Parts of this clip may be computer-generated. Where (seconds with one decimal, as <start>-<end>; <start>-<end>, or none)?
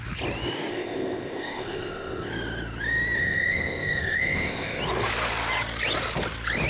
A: 0.7-2.3; 3.2-4.8